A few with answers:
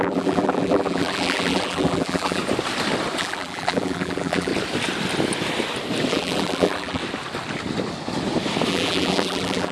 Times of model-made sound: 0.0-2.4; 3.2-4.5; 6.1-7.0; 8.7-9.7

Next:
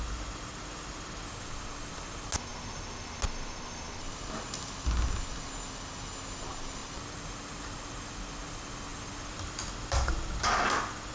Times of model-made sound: 6.8-8.1; 8.9-10.4

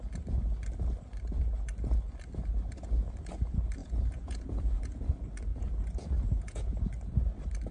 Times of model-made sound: 3.8-5.1; 5.5-6.9